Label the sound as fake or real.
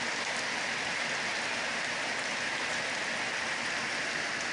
real